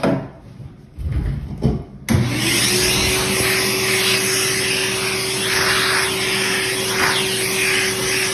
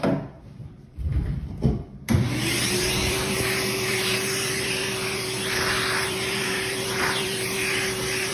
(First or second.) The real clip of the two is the first